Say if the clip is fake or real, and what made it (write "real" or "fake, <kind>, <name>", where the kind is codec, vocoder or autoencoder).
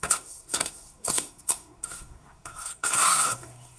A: fake, codec, SNAC